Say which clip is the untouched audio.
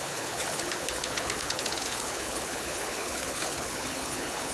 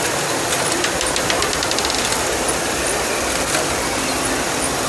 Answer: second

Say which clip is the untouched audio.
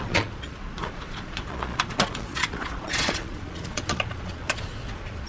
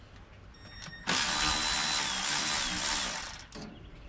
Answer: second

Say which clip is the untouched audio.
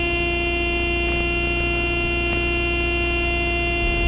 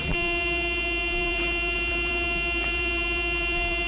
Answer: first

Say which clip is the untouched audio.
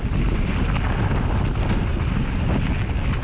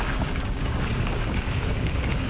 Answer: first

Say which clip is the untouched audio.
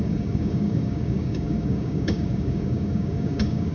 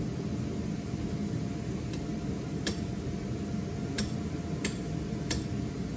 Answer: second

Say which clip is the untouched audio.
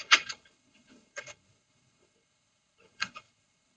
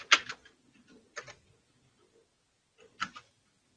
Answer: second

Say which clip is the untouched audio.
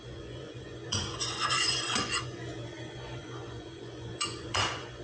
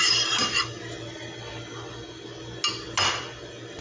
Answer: second